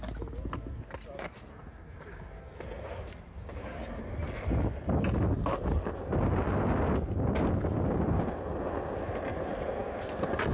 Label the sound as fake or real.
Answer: real